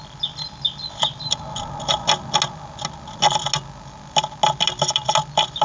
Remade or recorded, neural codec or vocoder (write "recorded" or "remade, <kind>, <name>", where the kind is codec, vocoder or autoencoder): recorded